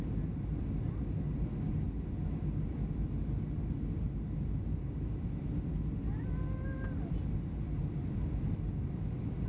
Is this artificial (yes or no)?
no